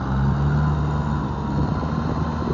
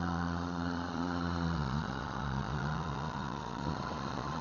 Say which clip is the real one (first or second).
first